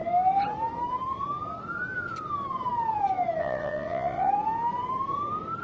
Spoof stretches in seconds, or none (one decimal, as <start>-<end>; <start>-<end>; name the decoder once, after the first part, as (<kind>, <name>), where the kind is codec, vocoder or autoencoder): 3.4-4.3 (vocoder, WaveNeXt)

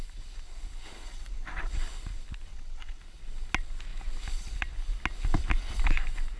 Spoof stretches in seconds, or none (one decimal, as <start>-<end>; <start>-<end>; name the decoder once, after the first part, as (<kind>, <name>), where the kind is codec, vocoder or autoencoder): 1.1-1.7 (vocoder, WaveNeXt); 2.5-3.0